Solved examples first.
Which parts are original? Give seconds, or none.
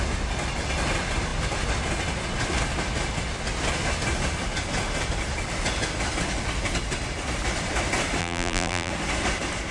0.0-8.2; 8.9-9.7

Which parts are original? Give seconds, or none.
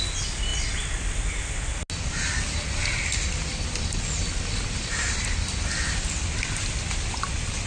0.0-7.7